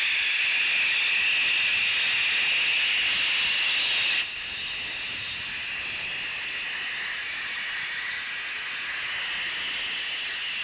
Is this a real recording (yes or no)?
yes